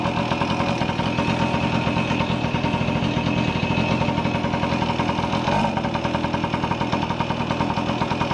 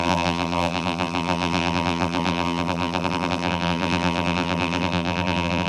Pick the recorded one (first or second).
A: first